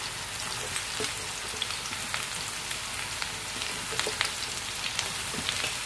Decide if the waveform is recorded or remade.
recorded